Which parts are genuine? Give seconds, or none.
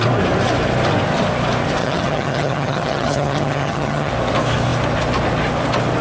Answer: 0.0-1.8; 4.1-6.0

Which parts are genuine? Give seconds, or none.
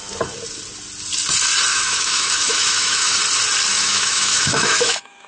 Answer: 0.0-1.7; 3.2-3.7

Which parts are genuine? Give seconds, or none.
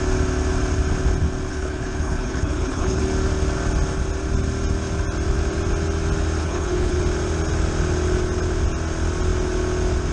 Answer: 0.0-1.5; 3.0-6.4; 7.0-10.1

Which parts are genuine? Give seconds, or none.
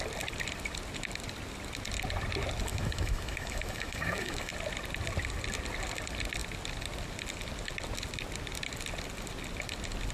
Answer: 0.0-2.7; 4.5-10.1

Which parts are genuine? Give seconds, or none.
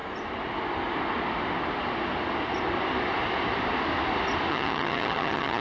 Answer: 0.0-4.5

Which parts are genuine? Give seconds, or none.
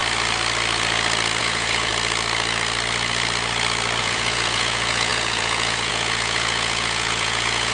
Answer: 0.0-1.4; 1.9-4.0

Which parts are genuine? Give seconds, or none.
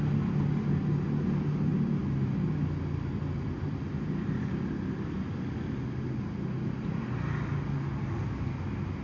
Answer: 0.0-9.0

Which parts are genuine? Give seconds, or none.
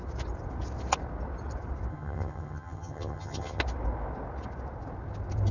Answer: 0.0-1.9; 3.6-5.5